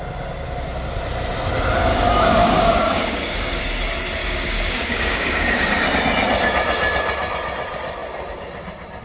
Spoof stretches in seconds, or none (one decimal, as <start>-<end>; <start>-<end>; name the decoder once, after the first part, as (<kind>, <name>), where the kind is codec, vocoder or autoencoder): 1.9-3.6 (codec, DAC); 4.2-5.8